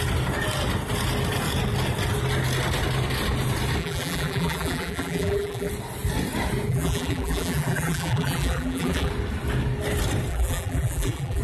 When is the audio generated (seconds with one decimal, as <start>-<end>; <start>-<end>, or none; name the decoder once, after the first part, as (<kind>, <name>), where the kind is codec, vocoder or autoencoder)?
3.8-5.7 (vocoder, BigVGAN v2); 6.7-9.1; 10.3-11.4